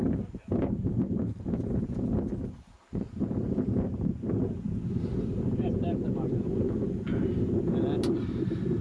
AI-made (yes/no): no